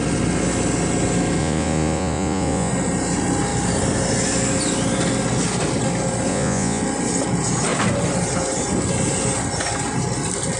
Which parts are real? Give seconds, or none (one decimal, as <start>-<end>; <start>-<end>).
0.0-1.4; 2.7-6.3; 6.8-10.6